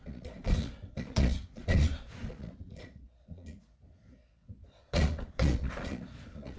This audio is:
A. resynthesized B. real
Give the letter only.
A